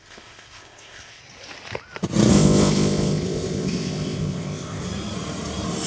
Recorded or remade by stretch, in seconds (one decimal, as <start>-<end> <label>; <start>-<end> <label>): 0.0-1.2 remade; 1.2-2.3 recorded; 2.3-4.8 remade; 4.8-5.9 recorded